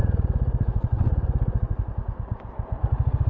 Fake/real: real